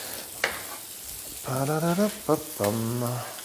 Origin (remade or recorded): recorded